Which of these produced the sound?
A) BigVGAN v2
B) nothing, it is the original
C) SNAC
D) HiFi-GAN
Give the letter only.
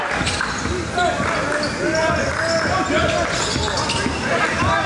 B